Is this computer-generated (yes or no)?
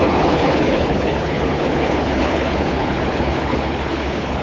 yes